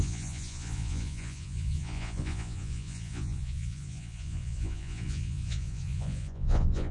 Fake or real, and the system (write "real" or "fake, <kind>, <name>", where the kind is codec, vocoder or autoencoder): fake, vocoder, Vocos